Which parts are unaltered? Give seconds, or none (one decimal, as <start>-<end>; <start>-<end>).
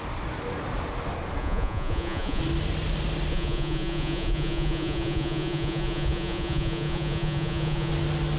0.0-1.4; 2.4-3.3; 7.9-8.4